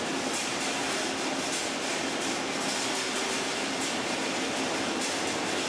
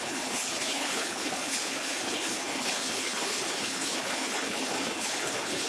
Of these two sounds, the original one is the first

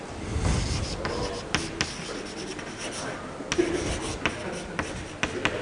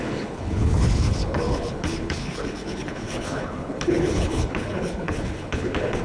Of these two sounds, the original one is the first